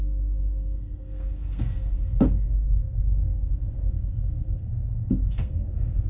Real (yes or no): no